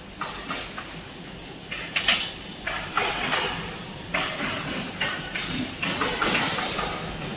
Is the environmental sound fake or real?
real